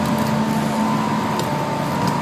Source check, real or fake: real